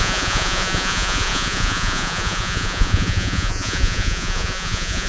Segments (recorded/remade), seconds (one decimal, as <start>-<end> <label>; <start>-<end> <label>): 0.0-5.1 remade